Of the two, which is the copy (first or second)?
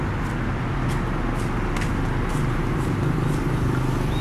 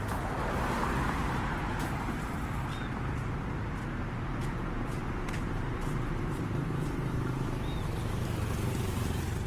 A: second